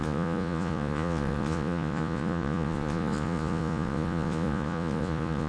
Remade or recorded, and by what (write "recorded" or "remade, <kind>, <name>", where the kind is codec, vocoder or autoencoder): remade, vocoder, Vocos